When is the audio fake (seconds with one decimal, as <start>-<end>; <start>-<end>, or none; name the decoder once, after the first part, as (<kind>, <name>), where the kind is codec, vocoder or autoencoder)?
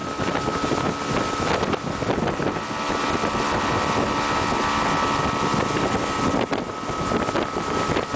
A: none